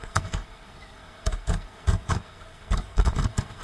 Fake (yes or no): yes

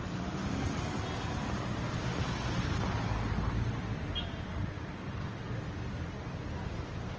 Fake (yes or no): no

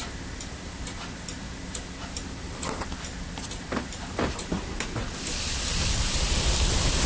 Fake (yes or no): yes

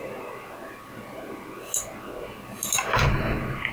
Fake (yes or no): no